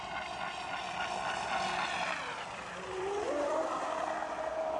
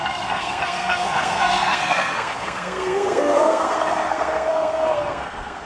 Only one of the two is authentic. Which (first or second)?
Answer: first